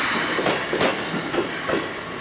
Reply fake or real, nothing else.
real